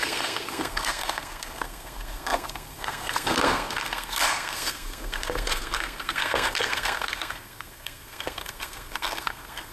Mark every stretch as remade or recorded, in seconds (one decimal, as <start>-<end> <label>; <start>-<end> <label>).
0.0-9.7 remade